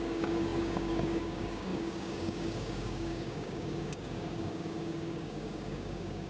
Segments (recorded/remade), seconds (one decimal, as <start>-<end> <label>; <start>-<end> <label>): 0.0-6.3 remade

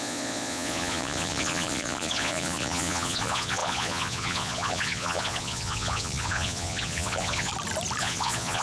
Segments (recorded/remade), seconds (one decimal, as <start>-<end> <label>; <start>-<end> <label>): 0.0-7.5 remade; 7.5-8.0 recorded; 8.0-8.6 remade